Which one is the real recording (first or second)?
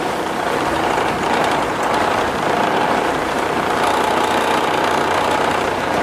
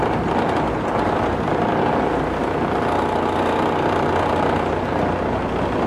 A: second